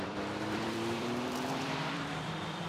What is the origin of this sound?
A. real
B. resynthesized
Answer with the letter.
B